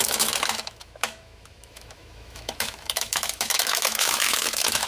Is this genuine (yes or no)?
no